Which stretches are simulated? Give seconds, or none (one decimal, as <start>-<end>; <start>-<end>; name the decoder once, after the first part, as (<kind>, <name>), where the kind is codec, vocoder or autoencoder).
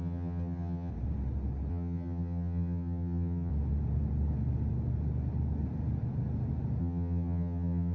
0.0-0.9 (vocoder, HiFi-GAN); 1.7-3.5; 6.8-7.9